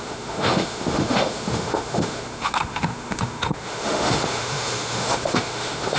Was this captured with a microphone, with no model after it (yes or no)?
no